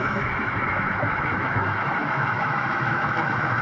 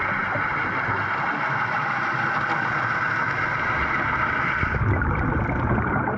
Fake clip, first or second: first